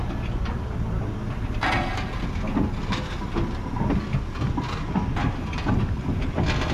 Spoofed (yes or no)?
no